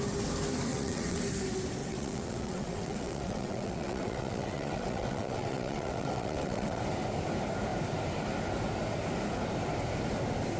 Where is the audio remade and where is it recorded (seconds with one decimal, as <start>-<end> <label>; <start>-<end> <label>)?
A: 0.0-0.7 recorded; 0.7-1.2 remade; 1.2-1.8 recorded; 1.8-6.8 remade; 6.8-10.6 recorded